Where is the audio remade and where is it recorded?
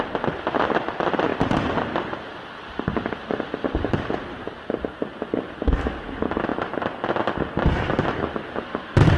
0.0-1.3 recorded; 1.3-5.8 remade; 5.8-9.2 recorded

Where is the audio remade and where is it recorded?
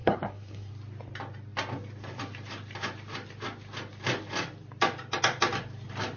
0.0-0.7 remade; 0.7-6.2 recorded